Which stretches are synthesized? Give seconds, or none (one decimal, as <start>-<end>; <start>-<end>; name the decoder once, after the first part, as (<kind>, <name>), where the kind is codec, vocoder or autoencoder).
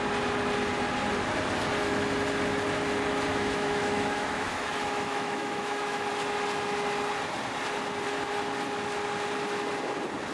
3.3-6.1 (autoencoder, DAC-VAE)